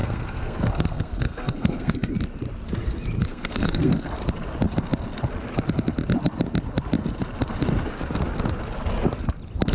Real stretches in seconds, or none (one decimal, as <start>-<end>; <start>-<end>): 2.1-3.3; 4.1-9.7